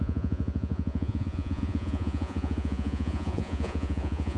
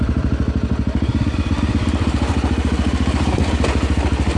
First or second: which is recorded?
second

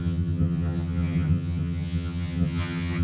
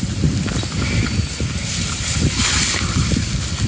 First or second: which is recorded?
second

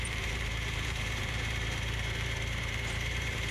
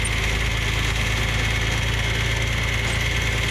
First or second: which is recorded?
second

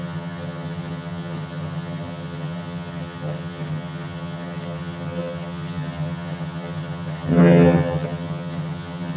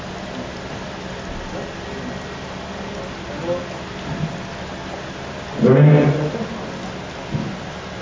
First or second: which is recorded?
second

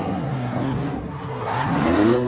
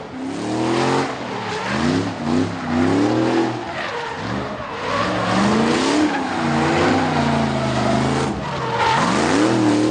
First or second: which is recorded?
second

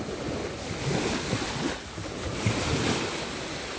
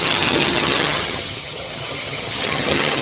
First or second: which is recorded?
first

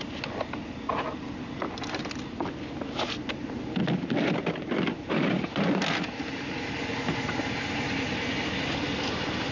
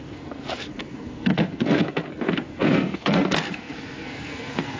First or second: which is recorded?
first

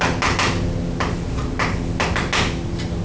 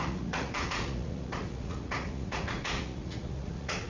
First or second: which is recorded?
first